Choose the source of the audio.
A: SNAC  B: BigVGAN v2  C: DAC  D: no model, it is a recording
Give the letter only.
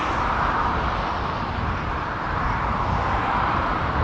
D